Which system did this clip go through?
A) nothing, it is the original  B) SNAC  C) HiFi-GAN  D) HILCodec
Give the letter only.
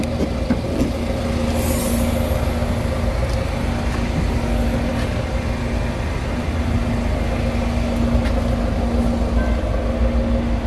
A